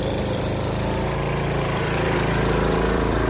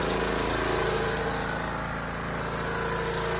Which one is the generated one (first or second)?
first